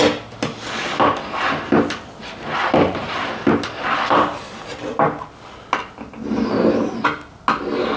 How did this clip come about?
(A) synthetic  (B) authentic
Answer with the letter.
B